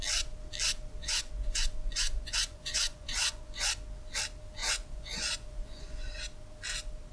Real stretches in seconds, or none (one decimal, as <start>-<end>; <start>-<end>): 0.0-1.0; 3.7-4.6; 6.2-7.1